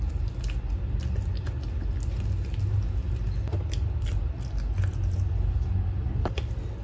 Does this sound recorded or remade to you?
recorded